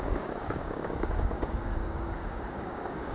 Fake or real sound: fake